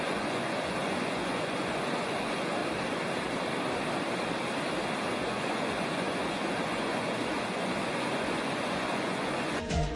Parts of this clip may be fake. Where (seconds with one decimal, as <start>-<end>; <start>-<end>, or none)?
0.0-2.6; 5.0-10.0